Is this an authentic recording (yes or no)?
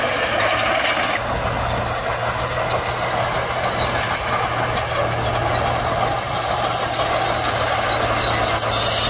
yes